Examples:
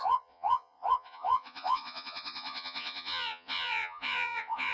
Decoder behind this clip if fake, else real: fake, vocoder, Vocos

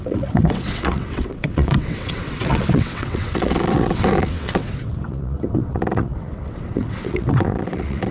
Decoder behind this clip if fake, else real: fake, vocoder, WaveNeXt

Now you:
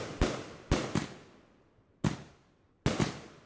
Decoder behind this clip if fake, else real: real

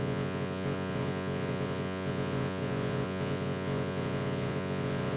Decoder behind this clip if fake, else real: fake, vocoder, Vocos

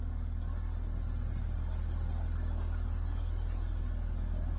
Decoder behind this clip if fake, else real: real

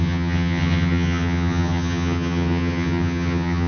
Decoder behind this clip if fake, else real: fake, vocoder, HiFi-GAN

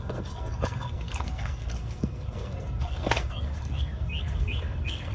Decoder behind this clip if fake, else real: fake, codec, SNAC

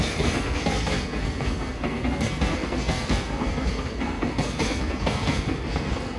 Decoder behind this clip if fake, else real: fake, codec, SNAC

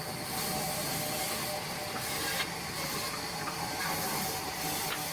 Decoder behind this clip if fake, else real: real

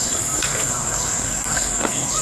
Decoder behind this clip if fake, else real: fake, codec, SNAC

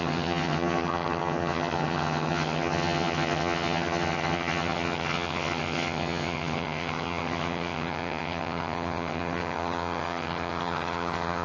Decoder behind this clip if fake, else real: fake, vocoder, HiFi-GAN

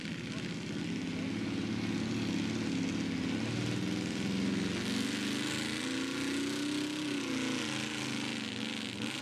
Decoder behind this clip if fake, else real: real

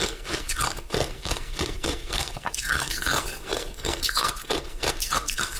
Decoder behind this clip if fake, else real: fake, codec, SNAC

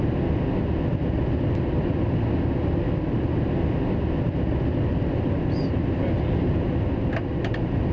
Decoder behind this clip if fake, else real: real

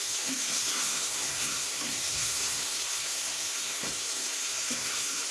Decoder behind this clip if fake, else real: fake, codec, SNAC